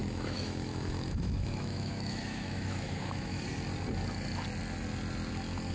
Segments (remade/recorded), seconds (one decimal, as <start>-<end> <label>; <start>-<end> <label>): 0.0-3.4 remade; 3.4-5.7 recorded